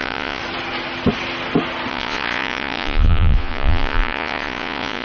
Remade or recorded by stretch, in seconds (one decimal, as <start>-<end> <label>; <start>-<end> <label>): 0.0-0.4 remade; 0.4-1.9 recorded; 1.9-5.0 remade